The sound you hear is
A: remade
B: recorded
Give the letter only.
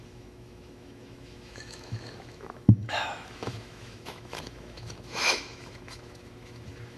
A